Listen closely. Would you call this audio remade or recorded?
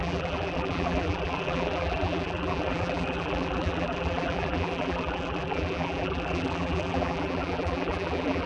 remade